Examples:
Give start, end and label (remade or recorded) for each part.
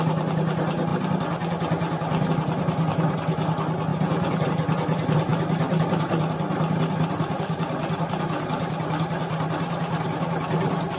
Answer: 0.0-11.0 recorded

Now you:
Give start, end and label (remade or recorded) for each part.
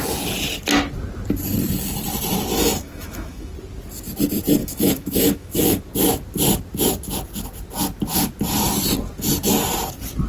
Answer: 0.0-2.5 recorded; 2.5-3.5 remade; 3.5-4.6 recorded; 4.6-5.8 remade; 5.8-10.3 recorded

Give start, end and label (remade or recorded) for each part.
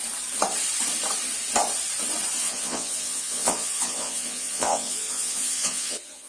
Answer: 0.0-2.4 recorded; 2.4-6.3 remade